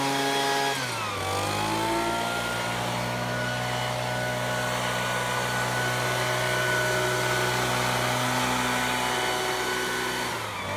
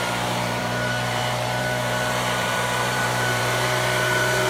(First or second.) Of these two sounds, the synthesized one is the second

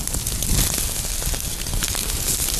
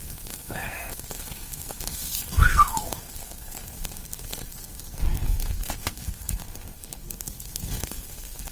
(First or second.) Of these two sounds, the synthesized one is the second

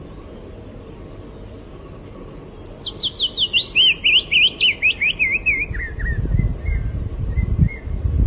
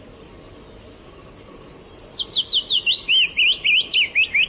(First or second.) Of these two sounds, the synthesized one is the second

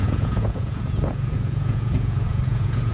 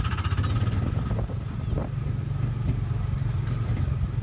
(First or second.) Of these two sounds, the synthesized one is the first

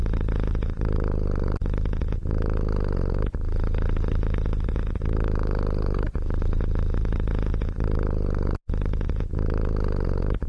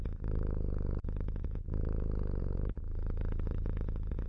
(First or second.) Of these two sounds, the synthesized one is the first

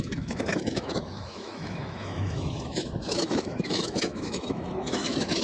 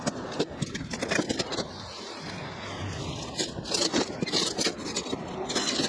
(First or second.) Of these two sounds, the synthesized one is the first